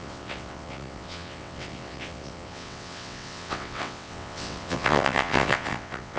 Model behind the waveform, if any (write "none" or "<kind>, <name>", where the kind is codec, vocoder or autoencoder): vocoder, WaveNeXt